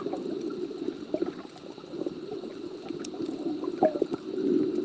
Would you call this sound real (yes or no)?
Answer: yes